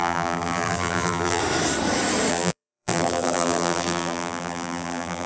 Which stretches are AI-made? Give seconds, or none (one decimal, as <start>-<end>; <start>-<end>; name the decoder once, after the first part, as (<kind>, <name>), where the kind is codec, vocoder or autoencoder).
0.0-1.4 (vocoder, BigVGAN v2); 2.3-5.3